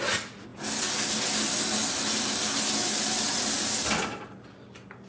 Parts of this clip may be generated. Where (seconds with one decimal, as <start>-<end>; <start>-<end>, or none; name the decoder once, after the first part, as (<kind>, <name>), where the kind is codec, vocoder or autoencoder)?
none